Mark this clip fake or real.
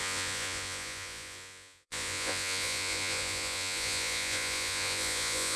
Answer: fake